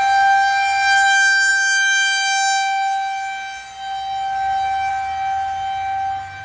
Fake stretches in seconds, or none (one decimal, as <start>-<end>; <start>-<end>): none